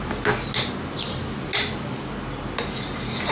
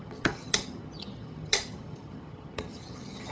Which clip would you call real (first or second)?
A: first